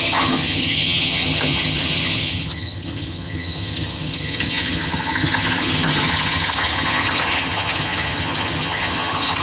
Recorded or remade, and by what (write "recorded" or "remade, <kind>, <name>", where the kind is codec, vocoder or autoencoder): remade, vocoder, HiFi-GAN